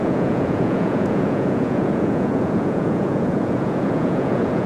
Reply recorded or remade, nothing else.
remade